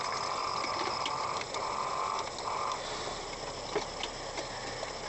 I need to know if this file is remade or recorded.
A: recorded